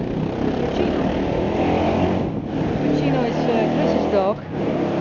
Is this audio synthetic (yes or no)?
no